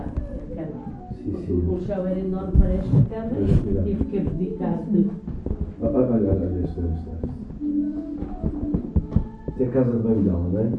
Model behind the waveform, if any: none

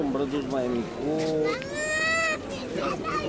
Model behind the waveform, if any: none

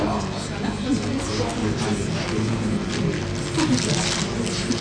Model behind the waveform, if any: none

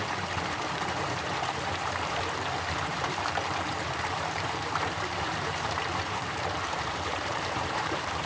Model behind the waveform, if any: vocoder, BigVGAN v2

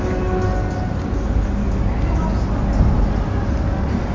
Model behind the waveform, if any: none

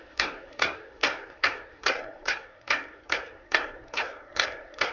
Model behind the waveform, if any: codec, SNAC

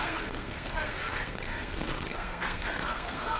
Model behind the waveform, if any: codec, SNAC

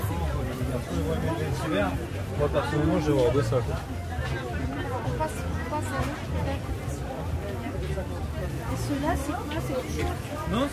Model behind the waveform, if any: none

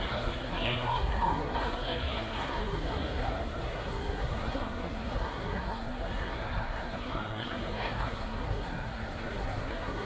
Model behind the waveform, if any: codec, SNAC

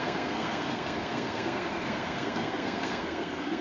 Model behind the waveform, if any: codec, SNAC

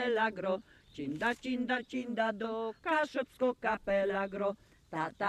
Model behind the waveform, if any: none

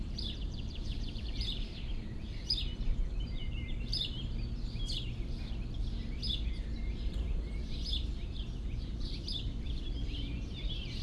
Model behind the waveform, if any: vocoder, BigVGAN v2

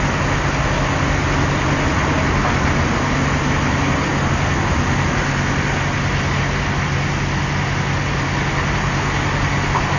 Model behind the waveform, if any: none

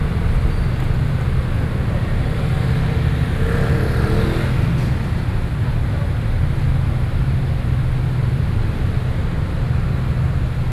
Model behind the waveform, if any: none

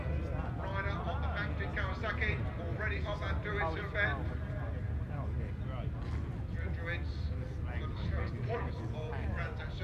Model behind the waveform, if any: none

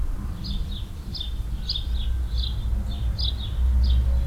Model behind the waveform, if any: none